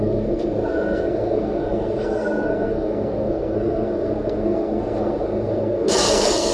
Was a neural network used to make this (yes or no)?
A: yes